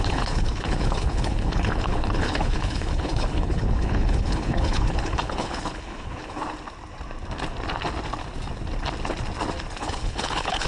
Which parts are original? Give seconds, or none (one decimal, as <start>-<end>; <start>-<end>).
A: 6.4-9.8